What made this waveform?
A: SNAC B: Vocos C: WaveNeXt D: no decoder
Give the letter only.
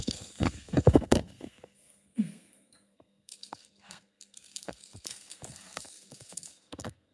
A